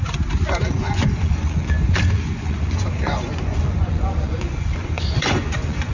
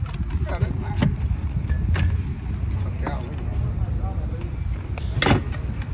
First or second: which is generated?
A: first